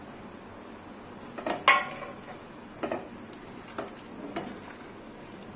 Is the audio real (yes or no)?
yes